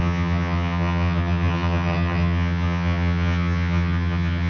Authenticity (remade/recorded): remade